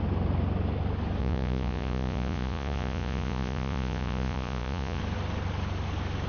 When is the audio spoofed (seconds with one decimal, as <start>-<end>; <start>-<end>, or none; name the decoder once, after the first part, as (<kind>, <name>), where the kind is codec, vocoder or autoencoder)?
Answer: 1.2-5.0 (vocoder, Vocos)